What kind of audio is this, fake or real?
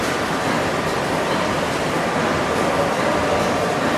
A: real